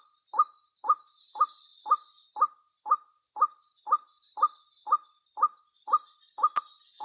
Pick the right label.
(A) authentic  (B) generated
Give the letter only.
A